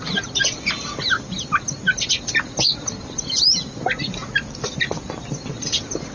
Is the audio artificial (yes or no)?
no